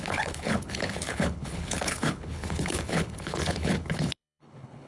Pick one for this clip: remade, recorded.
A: remade